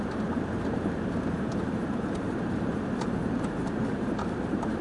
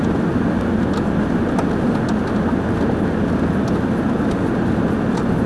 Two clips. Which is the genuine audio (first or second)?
second